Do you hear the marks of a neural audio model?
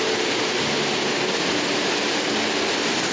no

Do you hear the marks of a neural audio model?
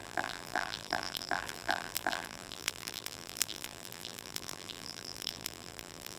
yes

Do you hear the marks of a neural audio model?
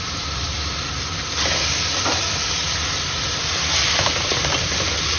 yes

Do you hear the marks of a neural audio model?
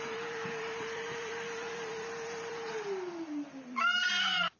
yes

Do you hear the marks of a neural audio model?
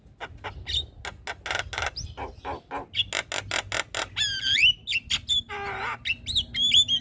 no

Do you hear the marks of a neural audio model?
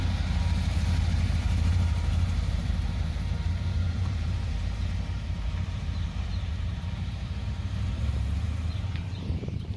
yes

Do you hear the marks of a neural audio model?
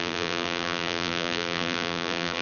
yes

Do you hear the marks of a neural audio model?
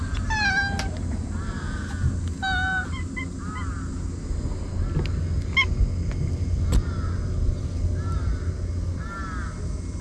no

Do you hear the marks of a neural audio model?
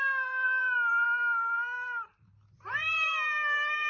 yes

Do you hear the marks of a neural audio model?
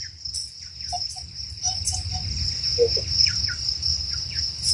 no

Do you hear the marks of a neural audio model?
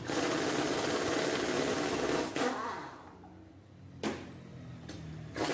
no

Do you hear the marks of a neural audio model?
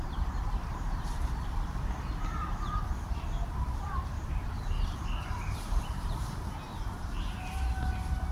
yes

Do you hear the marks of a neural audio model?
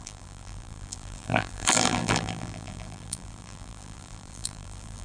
yes